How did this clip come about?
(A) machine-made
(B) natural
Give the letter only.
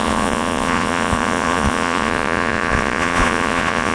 A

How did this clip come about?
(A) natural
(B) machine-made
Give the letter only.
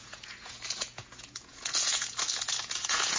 B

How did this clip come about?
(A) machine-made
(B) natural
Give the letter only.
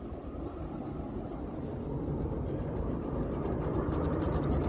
B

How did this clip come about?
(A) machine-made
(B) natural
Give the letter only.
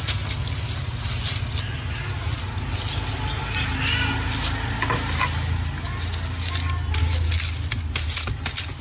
B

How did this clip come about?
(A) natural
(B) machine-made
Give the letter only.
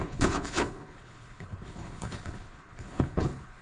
B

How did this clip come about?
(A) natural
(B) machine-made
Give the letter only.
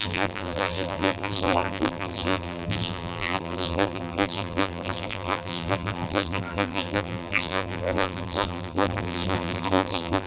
B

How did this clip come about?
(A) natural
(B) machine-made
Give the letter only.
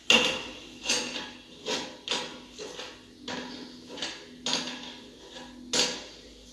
A